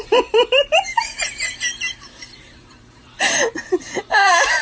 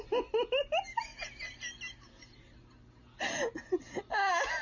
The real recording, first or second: second